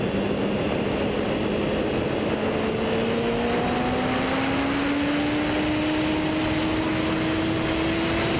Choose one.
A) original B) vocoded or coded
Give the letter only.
A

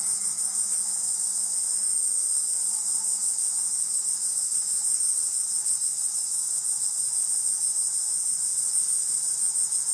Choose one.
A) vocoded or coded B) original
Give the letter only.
A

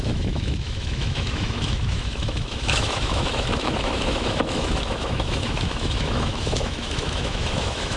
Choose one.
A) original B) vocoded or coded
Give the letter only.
B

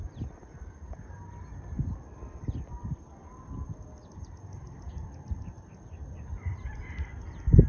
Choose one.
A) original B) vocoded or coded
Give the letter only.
A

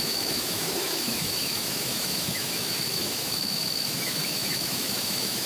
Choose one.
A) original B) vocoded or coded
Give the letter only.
B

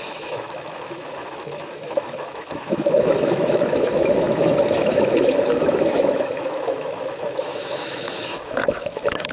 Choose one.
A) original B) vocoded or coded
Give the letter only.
B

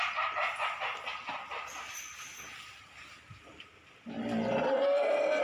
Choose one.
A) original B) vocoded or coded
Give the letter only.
A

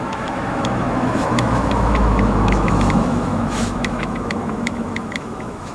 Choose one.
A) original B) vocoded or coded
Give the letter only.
B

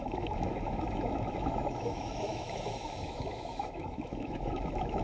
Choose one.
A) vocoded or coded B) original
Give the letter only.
A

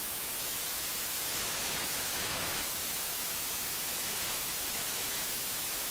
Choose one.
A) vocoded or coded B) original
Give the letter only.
A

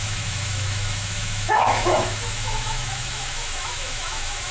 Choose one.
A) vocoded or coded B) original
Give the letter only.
A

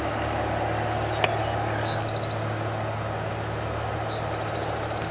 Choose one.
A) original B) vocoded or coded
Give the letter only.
A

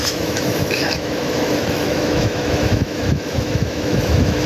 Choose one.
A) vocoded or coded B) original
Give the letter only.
A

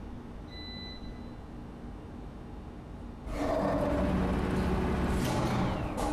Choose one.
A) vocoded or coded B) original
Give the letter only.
B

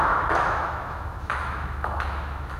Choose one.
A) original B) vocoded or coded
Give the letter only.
B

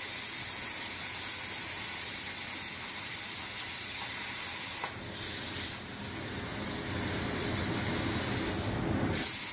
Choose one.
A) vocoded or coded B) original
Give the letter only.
B